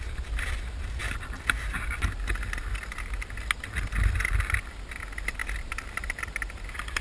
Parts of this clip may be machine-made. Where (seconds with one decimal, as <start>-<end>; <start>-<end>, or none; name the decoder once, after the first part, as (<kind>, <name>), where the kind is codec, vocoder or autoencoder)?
none